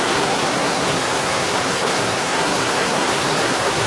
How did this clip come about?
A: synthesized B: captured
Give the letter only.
A